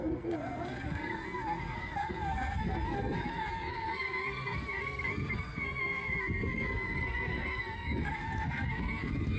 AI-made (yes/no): yes